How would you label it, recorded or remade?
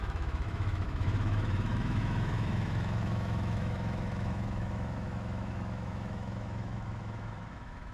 remade